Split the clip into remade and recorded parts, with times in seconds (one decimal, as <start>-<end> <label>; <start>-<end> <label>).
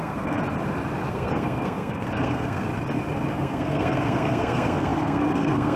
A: 0.0-0.4 remade; 0.4-1.1 recorded; 1.1-2.7 remade; 2.7-3.3 recorded; 3.3-5.8 remade